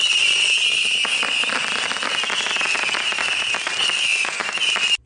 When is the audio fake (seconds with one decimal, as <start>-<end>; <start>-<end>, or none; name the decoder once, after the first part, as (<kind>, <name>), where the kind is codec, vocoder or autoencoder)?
4.1-4.6 (vocoder, Vocos)